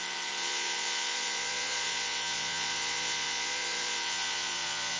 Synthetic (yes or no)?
yes